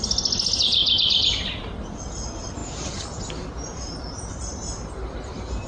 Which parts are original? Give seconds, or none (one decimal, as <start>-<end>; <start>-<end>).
0.0-5.7